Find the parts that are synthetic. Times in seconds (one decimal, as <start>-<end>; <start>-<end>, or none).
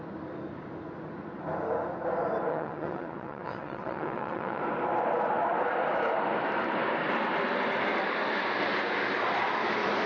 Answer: 2.5-4.6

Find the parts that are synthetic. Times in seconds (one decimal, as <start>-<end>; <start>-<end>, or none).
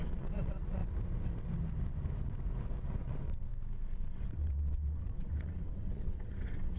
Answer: 0.0-0.8; 2.8-3.5; 4.0-6.8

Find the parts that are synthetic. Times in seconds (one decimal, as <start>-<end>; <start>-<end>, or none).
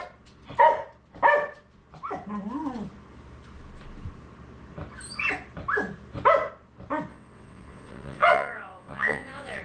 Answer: 7.1-9.6